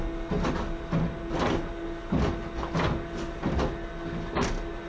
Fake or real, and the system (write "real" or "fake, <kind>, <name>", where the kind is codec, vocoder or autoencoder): real